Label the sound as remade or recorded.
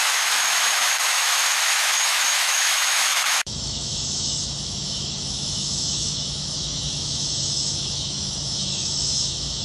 remade